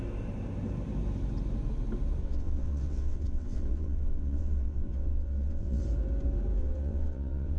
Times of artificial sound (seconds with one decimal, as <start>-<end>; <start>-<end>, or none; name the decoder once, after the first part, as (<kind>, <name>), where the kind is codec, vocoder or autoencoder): 2.2-5.8 (vocoder, WaveNeXt); 6.6-7.6